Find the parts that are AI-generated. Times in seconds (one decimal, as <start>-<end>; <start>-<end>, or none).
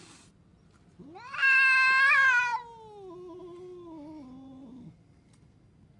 none